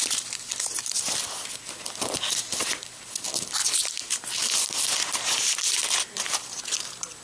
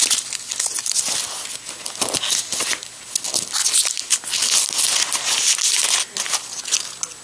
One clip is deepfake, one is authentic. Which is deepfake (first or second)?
first